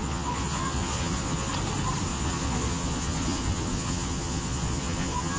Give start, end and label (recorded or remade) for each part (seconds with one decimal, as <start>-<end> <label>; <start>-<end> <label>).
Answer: 0.0-1.5 remade; 1.5-2.1 recorded; 2.1-5.4 remade